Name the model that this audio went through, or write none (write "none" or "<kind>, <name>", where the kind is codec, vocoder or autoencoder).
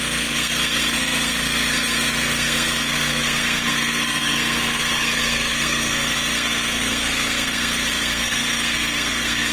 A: codec, SNAC